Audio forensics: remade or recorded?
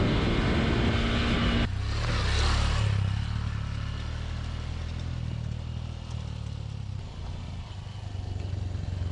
recorded